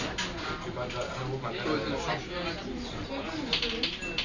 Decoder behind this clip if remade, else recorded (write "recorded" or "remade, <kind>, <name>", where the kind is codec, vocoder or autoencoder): recorded